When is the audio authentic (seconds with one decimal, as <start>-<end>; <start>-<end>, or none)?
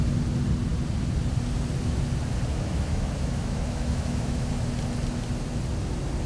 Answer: 0.0-2.5; 4.5-6.3